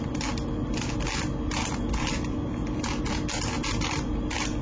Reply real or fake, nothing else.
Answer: real